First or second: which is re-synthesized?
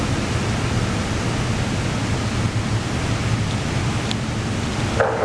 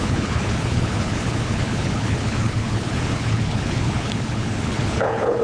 second